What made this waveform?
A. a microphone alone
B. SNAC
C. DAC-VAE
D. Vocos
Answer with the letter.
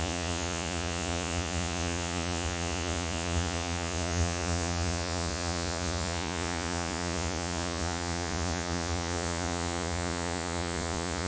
D